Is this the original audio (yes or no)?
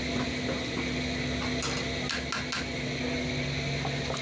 yes